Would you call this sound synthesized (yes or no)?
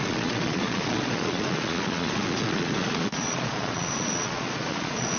yes